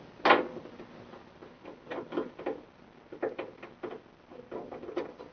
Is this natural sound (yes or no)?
yes